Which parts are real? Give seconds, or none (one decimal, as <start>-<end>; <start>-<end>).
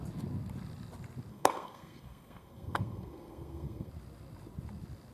0.0-1.3; 3.9-5.1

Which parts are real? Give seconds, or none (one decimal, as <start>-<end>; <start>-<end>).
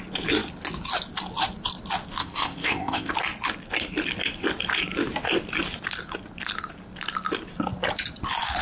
0.0-2.2; 3.1-8.6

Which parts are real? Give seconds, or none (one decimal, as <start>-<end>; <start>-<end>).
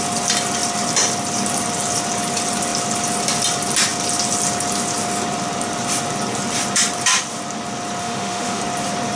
0.0-8.0; 8.6-9.2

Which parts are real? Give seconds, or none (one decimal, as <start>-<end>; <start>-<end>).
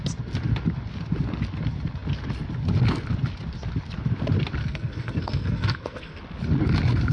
0.0-4.6; 6.2-7.1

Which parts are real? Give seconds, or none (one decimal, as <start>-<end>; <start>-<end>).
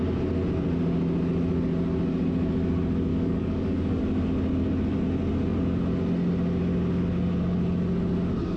0.0-3.1; 4.0-8.6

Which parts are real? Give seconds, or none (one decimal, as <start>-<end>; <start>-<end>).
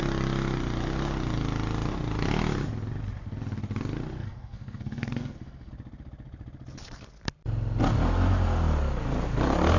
0.0-4.2; 5.7-9.8